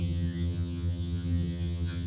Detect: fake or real fake